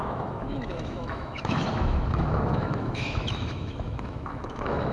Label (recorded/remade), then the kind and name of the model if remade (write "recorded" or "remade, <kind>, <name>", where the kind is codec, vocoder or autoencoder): remade, autoencoder, DAC-VAE